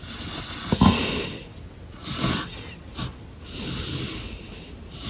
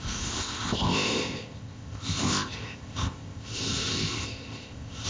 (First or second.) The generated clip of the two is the second